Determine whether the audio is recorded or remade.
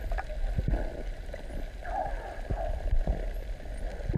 recorded